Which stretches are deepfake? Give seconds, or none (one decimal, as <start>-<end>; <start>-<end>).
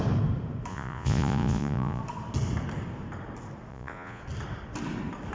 0.7-2.0; 3.7-4.2